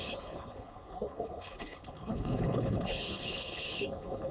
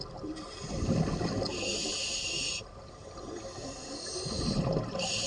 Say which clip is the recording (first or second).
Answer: second